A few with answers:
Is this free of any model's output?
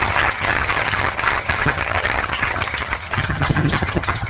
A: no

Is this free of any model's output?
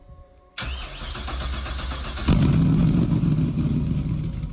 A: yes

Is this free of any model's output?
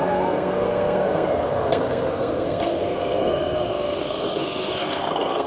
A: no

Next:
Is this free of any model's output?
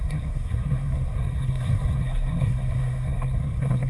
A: no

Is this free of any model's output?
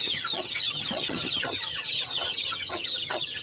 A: no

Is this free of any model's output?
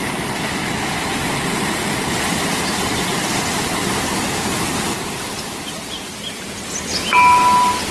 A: yes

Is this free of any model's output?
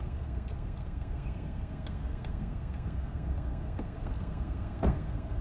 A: no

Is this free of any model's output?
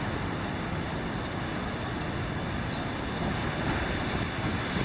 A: yes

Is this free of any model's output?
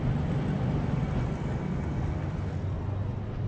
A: yes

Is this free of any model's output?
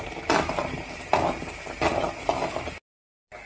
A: yes